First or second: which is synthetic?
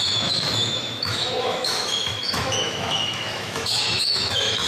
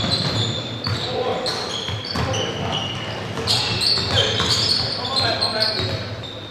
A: first